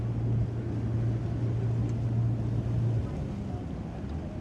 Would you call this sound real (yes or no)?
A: yes